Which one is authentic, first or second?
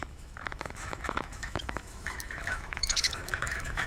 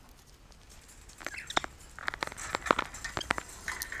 second